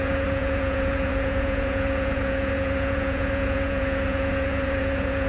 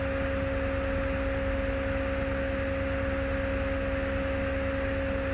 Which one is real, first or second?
second